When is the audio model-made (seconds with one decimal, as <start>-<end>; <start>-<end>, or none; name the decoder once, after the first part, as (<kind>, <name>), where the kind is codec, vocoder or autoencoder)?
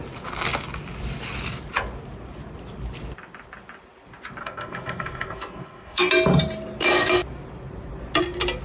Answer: 4.4-6.1 (codec, SNAC)